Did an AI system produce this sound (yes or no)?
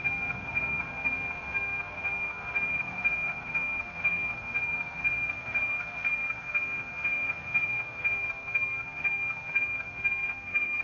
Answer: yes